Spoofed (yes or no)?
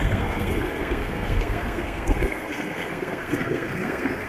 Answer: yes